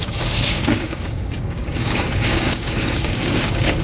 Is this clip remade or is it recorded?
remade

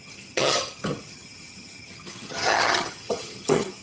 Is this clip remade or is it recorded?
remade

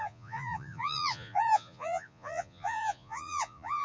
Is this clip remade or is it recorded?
remade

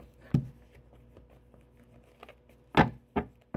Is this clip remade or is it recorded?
recorded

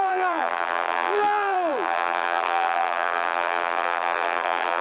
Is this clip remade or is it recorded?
remade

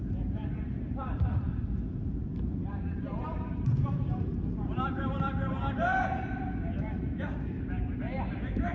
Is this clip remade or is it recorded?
remade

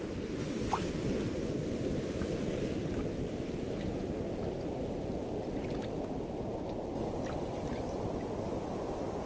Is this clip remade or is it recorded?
recorded